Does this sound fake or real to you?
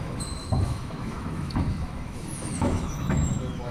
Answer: fake